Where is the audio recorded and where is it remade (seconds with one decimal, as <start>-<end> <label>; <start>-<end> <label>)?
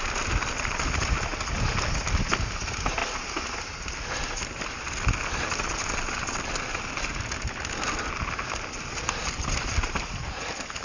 0.0-10.8 recorded